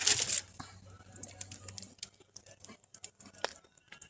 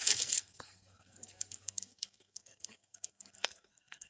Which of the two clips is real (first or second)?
first